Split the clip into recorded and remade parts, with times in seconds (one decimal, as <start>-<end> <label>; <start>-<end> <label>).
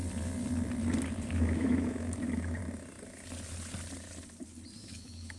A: 0.0-1.3 recorded; 1.3-2.6 remade; 2.6-4.8 recorded; 4.8-5.4 remade